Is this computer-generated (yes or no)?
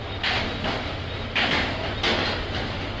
no